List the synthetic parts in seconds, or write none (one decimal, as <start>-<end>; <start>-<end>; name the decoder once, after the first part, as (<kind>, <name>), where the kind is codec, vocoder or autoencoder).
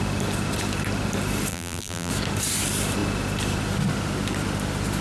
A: 1.5-2.1 (vocoder, BigVGAN v2)